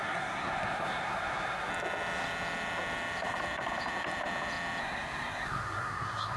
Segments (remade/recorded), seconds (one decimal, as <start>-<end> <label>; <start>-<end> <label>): 0.0-1.7 remade; 1.7-4.8 recorded; 4.8-6.4 remade